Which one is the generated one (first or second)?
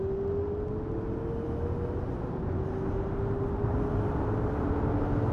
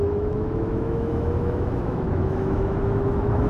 second